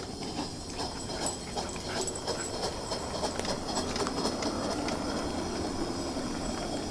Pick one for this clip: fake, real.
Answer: real